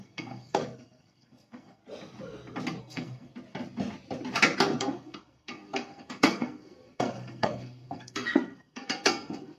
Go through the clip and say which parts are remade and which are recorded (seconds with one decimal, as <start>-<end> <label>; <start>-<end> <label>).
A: 0.0-1.8 remade; 1.8-2.8 recorded; 2.8-3.3 remade; 3.3-4.8 recorded; 4.8-9.6 remade